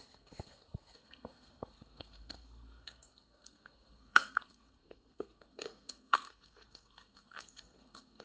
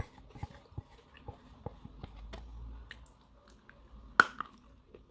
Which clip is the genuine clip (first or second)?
second